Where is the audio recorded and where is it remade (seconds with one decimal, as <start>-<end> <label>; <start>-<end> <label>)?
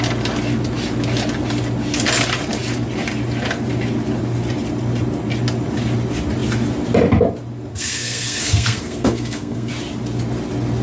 0.0-7.7 recorded; 7.7-9.7 remade; 9.7-10.8 recorded